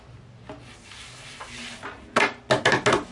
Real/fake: real